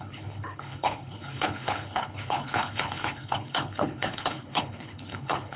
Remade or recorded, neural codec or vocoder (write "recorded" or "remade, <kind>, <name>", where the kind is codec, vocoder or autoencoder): remade, codec, HILCodec